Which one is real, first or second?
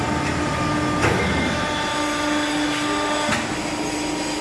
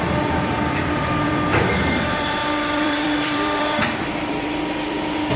first